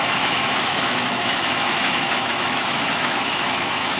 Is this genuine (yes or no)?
no